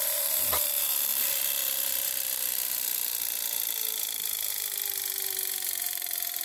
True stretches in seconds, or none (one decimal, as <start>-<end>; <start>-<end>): none